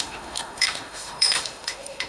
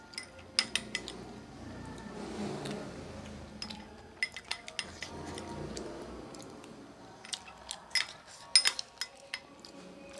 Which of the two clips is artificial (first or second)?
first